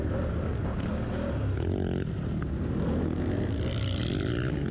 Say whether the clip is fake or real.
real